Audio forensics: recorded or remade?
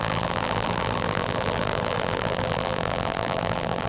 remade